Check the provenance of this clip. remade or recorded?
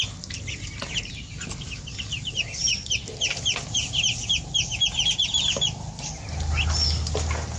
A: recorded